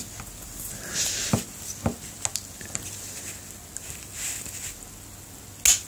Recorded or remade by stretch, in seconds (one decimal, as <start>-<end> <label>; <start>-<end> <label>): 0.0-5.9 recorded